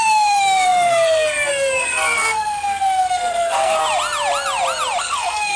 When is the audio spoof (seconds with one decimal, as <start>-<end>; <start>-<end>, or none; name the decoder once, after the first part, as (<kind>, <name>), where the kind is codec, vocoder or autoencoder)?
0.0-3.8 (codec, SNAC); 5.0-5.6